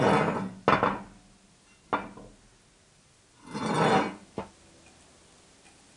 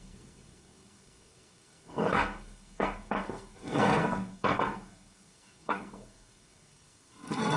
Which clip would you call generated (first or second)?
second